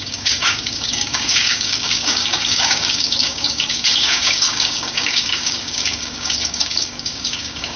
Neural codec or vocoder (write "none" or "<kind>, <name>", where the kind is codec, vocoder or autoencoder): codec, DAC